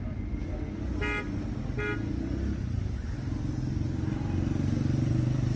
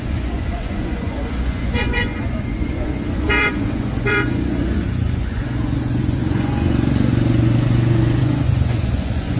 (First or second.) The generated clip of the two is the second